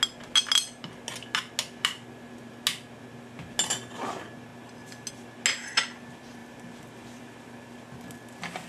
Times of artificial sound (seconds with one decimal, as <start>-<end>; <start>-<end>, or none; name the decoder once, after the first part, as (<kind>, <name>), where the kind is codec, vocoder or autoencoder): none